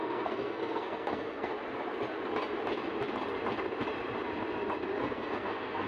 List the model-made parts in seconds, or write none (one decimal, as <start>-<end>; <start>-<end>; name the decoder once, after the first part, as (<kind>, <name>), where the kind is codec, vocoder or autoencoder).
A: 0.0-1.5 (codec, SNAC); 5.0-5.9